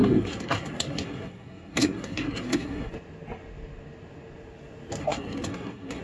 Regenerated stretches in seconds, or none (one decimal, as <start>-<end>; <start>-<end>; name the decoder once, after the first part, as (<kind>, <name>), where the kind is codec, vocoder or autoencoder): 0.0-2.9 (codec, SNAC); 5.0-6.0